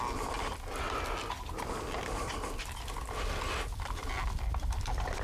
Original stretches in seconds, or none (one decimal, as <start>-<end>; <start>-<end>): 0.0-5.2